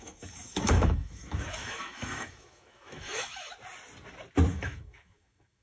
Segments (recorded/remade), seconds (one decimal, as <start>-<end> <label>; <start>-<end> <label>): 0.0-3.5 remade; 3.5-4.5 recorded; 4.5-5.6 remade